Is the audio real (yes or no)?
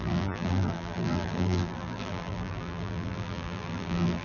no